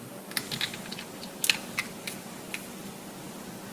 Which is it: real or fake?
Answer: real